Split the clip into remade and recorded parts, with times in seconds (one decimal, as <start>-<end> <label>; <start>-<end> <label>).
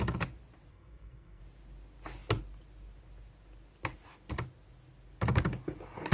0.0-0.7 recorded; 0.7-1.4 remade; 1.4-6.1 recorded